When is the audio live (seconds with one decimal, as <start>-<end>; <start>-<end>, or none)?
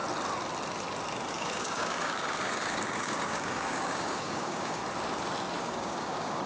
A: 0.0-1.3; 4.8-5.6